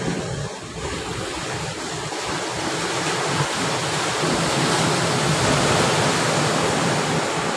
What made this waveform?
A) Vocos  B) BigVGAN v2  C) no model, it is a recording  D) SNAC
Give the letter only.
C